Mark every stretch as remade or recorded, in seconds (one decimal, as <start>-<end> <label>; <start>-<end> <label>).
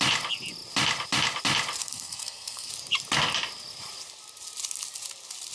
0.0-1.8 recorded; 1.8-2.7 remade; 2.7-5.5 recorded